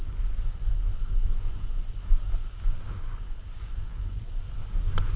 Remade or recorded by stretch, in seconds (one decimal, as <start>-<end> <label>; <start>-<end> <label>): 0.0-0.8 remade; 0.8-1.3 recorded; 1.3-1.9 remade; 1.9-3.0 recorded; 3.0-4.2 remade; 4.2-5.2 recorded